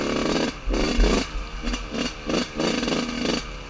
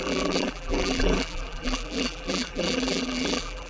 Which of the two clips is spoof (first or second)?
second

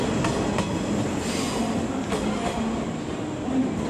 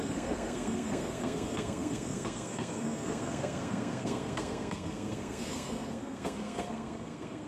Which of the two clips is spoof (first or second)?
second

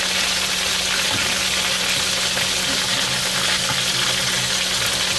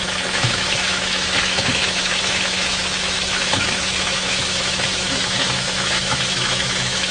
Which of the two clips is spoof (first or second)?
second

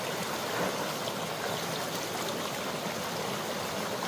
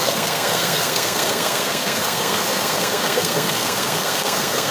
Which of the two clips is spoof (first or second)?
second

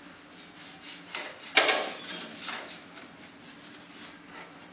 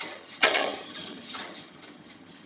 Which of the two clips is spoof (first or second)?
second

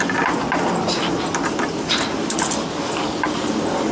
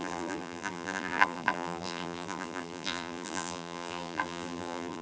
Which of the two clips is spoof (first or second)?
second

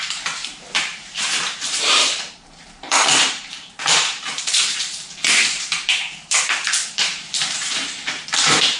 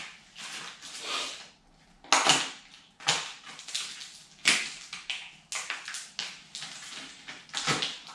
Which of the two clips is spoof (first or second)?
first